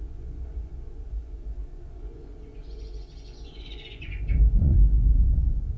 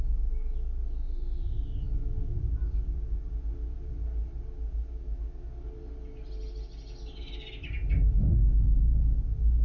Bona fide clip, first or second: second